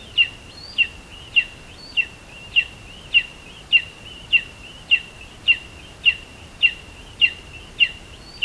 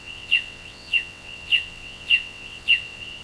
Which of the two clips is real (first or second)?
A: first